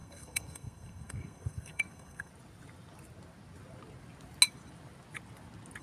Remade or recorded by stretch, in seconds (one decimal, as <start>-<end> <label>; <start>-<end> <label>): 0.0-2.3 remade; 2.3-5.8 recorded